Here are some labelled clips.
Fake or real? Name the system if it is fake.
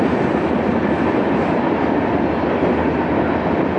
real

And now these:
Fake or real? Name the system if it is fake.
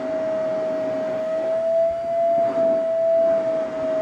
real